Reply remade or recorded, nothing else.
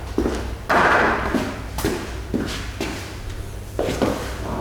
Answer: recorded